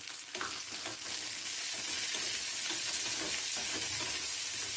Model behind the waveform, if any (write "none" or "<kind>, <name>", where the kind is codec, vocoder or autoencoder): none